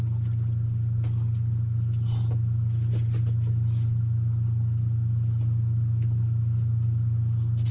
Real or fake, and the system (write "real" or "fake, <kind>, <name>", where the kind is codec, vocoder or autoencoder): real